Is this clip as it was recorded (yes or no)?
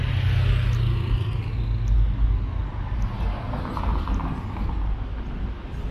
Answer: yes